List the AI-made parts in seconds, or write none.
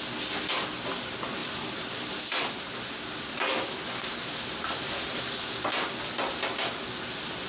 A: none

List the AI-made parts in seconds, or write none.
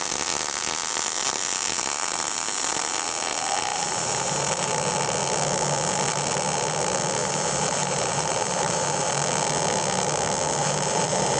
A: 3.7-4.7 (vocoder, BigVGAN v2); 7.2-9.1; 10.6-11.4